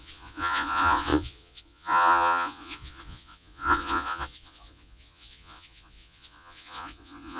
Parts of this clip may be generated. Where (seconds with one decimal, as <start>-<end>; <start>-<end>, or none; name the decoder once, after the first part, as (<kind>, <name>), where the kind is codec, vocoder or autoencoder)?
0.0-7.4 (vocoder, Vocos)